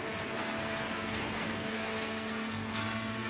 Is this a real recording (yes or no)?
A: no